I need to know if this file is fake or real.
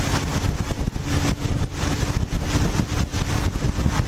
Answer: real